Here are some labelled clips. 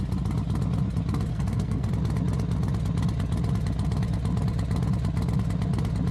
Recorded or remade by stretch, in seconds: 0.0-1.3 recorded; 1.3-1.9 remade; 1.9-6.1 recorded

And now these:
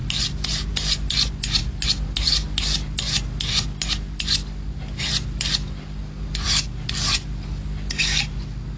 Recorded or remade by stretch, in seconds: 0.0-8.8 recorded

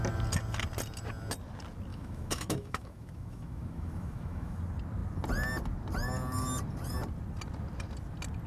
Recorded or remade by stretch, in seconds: 0.0-1.9 recorded; 1.9-4.6 remade; 4.6-8.5 recorded